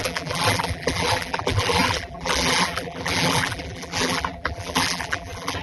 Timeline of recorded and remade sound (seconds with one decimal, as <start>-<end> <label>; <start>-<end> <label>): 0.0-5.6 remade